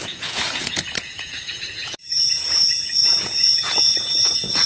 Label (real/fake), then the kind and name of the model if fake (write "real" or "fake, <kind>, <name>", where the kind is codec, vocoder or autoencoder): fake, vocoder, Vocos